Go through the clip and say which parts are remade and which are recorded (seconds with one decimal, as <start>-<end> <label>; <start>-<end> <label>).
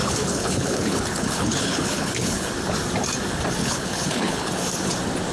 0.0-2.5 remade; 2.5-3.6 recorded; 3.6-4.5 remade; 4.5-5.3 recorded